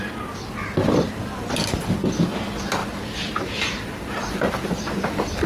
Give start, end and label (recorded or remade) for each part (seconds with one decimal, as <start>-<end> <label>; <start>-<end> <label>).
0.0-2.8 recorded; 2.8-4.3 remade; 4.3-5.5 recorded